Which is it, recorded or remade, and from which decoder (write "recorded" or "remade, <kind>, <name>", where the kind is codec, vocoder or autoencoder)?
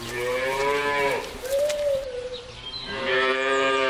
remade, vocoder, BigVGAN v2